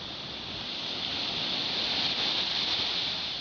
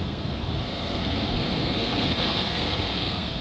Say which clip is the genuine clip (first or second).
first